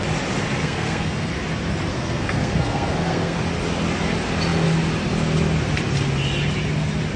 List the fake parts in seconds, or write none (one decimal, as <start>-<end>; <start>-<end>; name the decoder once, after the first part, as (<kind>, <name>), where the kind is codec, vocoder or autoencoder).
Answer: 0.6-1.3 (codec, SNAC); 1.9-3.4